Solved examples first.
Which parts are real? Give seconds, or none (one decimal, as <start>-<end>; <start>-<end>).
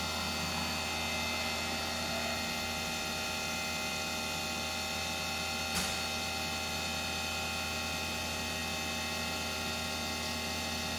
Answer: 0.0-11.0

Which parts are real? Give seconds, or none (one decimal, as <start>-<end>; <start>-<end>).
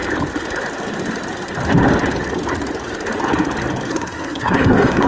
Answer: 0.0-3.9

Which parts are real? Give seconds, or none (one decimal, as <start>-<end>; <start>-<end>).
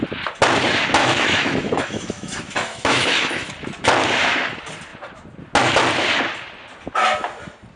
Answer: 0.0-1.0; 3.5-7.8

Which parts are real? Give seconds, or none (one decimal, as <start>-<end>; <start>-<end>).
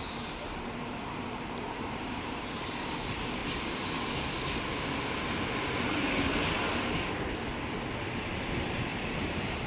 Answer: 3.4-8.0